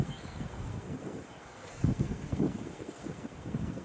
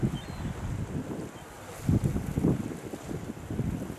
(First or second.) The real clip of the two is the second